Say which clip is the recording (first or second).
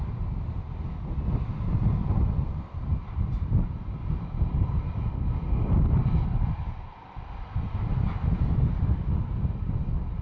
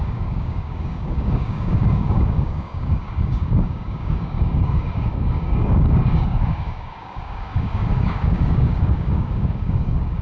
first